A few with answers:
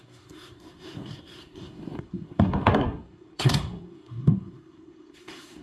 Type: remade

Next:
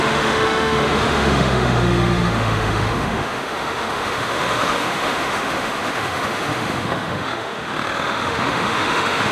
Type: remade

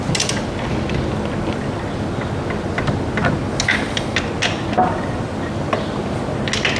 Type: recorded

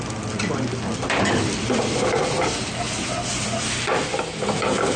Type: recorded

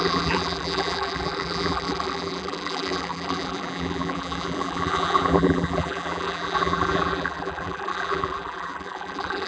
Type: remade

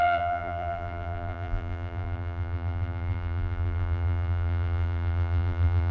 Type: remade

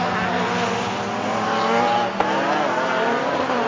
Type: recorded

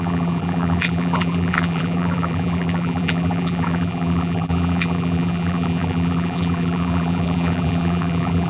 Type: remade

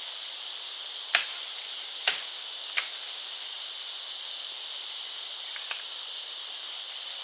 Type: recorded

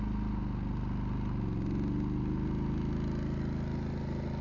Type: recorded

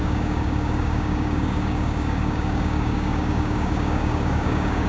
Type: remade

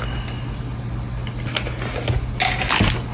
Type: recorded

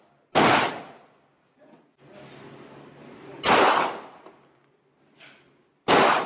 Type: recorded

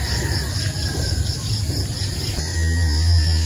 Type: recorded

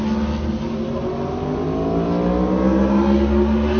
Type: recorded